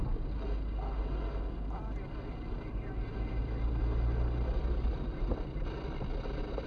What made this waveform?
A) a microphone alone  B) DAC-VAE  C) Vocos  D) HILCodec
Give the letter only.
A